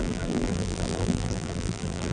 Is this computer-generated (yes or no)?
yes